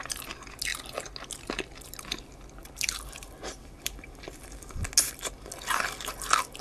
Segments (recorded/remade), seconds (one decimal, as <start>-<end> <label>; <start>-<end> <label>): 0.0-2.6 recorded; 2.6-4.8 remade; 4.8-6.6 recorded